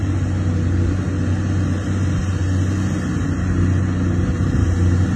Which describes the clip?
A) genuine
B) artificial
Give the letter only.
A